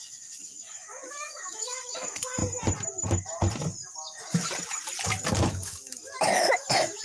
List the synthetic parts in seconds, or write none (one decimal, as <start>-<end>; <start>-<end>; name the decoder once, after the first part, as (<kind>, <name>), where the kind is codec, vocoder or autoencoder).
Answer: 0.0-2.4 (autoencoder, DAC-VAE); 5.4-7.0